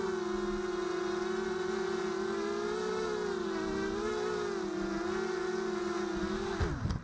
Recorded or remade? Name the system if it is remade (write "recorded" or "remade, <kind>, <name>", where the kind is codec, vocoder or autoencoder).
recorded